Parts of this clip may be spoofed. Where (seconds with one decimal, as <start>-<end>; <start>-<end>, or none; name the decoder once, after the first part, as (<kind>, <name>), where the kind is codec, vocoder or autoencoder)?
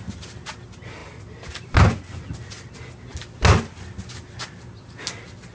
none